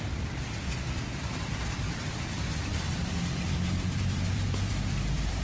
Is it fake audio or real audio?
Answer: fake